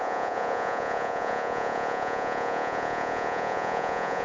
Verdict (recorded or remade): remade